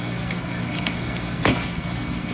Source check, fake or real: fake